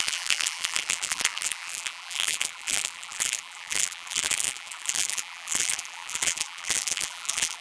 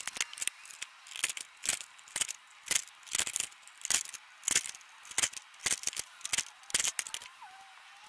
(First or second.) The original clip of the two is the second